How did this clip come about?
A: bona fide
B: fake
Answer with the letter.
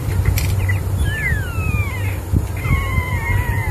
A